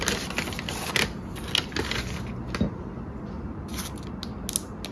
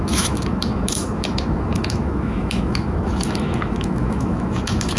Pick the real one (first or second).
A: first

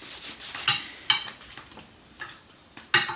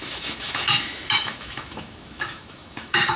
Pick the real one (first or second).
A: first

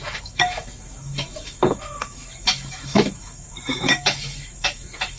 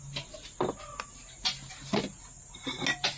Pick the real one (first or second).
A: second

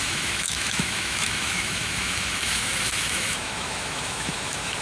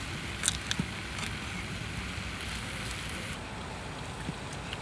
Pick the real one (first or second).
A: second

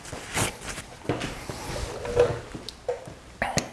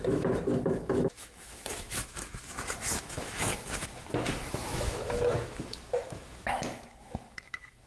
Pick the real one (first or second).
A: first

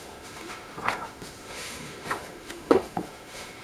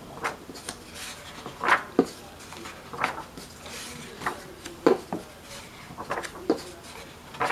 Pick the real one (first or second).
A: second